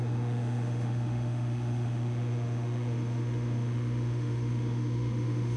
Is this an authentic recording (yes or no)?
no